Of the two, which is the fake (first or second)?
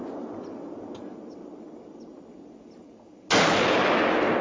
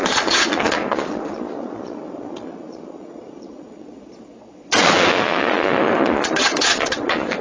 second